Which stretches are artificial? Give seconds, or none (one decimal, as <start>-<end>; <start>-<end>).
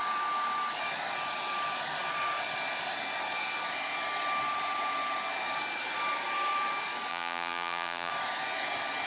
7.1-8.1